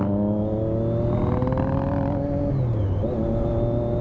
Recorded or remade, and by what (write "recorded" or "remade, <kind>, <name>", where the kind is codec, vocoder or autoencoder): recorded